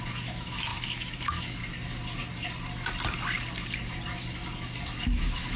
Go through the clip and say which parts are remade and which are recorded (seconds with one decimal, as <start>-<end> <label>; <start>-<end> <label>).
0.0-1.6 remade; 1.6-5.0 recorded; 5.0-5.6 remade